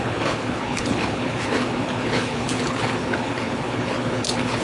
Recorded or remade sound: remade